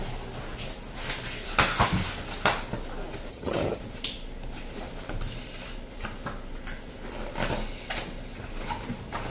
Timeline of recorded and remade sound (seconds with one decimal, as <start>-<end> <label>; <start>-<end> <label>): 0.0-3.3 recorded; 3.3-3.8 remade; 3.8-9.3 recorded